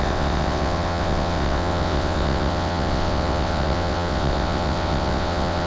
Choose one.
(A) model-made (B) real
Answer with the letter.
A